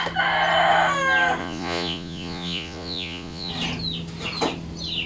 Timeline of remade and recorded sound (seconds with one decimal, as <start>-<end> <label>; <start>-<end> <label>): 0.0-1.4 recorded; 1.4-3.5 remade; 3.5-5.1 recorded